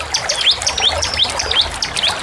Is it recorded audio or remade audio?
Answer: recorded